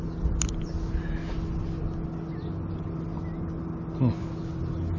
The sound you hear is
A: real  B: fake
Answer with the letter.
A